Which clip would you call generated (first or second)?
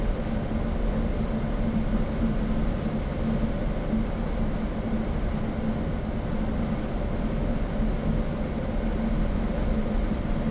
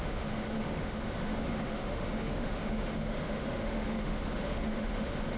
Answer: second